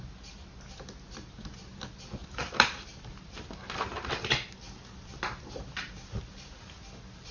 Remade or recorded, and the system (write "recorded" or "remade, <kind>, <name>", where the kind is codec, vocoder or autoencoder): recorded